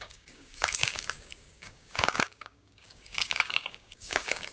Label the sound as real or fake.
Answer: fake